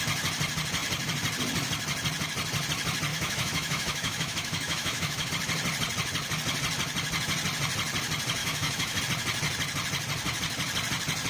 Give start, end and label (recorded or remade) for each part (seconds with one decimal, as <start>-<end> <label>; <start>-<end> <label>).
0.0-3.1 recorded; 3.1-5.3 remade; 5.3-8.4 recorded; 8.4-9.0 remade; 9.0-11.3 recorded